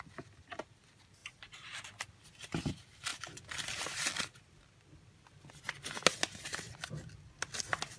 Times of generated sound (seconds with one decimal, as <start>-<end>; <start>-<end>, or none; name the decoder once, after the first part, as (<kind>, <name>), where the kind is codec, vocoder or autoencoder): none

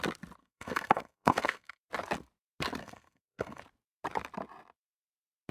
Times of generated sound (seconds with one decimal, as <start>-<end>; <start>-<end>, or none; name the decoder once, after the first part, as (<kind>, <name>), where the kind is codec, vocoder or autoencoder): 0.4-1.8 (codec, SNAC); 2.8-3.6